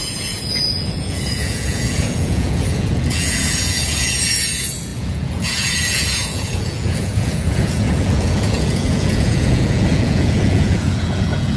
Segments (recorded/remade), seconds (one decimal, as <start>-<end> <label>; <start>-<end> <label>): 0.0-11.6 remade